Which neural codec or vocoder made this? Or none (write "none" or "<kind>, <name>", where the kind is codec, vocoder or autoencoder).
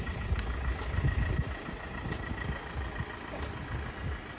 none